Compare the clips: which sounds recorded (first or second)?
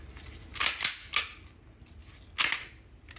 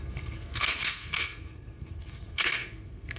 first